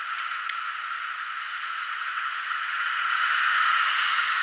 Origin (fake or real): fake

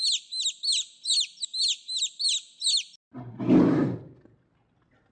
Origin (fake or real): real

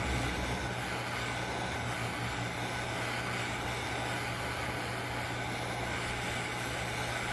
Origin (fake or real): real